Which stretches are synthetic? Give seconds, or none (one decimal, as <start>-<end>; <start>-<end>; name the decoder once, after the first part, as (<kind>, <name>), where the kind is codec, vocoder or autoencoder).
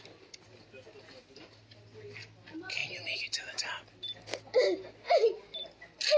none